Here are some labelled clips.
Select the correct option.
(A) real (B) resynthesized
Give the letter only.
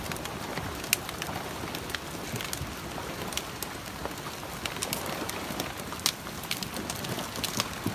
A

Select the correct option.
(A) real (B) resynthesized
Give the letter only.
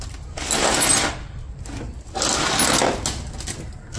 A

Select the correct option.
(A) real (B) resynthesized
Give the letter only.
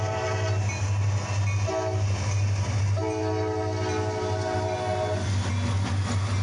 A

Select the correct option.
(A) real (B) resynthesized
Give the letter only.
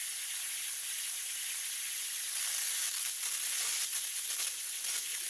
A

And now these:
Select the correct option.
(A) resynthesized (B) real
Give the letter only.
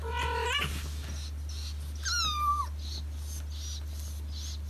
B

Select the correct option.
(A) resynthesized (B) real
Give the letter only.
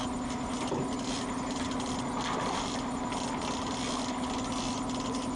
B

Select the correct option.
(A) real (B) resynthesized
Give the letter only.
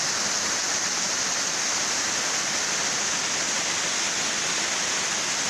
A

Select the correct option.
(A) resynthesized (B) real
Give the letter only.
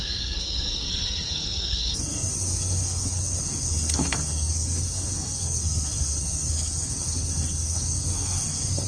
A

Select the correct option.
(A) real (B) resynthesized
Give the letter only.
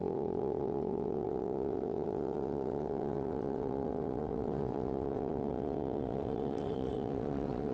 B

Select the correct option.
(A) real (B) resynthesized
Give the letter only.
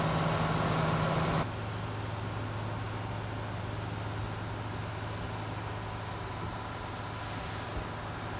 A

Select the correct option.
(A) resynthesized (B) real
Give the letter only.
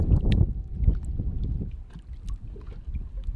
B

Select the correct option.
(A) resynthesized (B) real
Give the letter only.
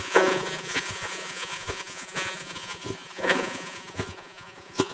A